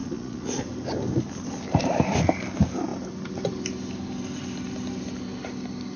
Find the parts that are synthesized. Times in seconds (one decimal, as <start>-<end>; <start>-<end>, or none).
0.0-0.6